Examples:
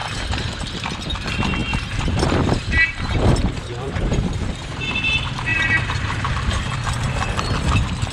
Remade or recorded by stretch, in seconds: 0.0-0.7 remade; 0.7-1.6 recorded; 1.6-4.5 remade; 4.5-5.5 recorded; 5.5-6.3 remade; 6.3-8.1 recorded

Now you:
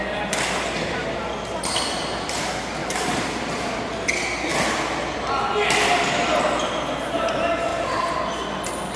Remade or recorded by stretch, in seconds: 0.0-2.8 recorded; 2.8-3.8 remade; 3.8-7.7 recorded; 7.7-8.2 remade; 8.2-9.0 recorded

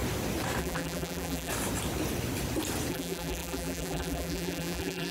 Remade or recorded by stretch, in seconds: 0.0-0.6 recorded; 0.6-1.5 remade; 1.5-2.9 recorded; 2.9-5.1 remade

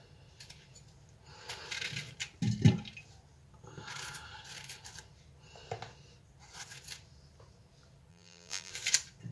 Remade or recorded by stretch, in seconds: 0.0-8.1 recorded; 8.1-8.7 remade; 8.7-9.3 recorded

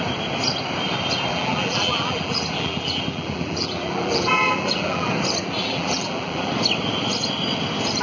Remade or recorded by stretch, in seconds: 0.0-1.3 recorded; 1.3-5.1 remade; 5.1-5.6 recorded; 5.6-6.5 remade; 6.5-8.0 recorded

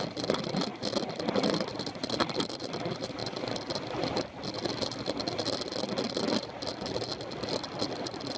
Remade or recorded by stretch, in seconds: 0.0-0.7 remade; 0.7-1.3 recorded; 1.3-3.2 remade; 3.2-8.0 recorded; 8.0-8.4 remade